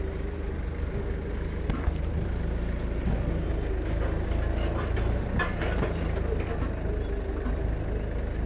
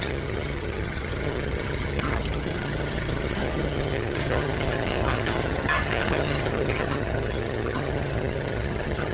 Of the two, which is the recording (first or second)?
first